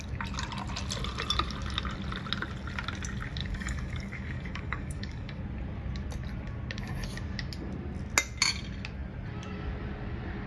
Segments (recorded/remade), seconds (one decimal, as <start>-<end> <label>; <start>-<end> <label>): 0.0-3.4 recorded; 3.4-5.4 remade; 5.4-10.5 recorded